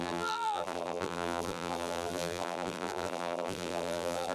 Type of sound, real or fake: fake